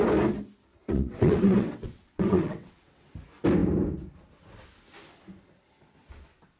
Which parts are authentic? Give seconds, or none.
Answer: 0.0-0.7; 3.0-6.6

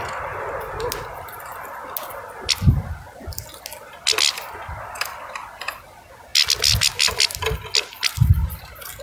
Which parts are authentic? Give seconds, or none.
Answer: 0.0-9.0

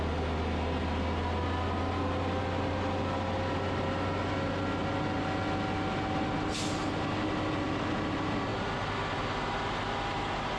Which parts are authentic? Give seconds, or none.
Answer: 0.0-10.6

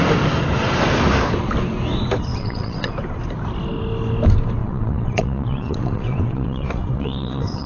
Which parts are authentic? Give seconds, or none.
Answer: 0.0-2.3; 2.9-4.6

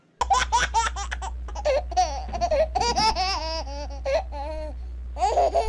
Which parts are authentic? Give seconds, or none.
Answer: 0.0-5.7

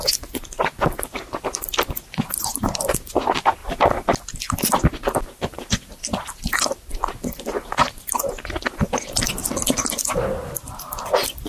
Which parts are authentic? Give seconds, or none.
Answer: 0.0-11.5

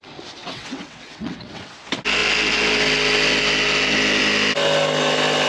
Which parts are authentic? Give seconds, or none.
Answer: 0.0-0.4; 1.7-5.5

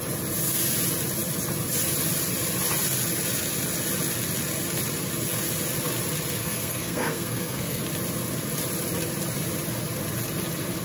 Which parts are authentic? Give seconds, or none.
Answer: 0.0-6.4; 7.8-10.8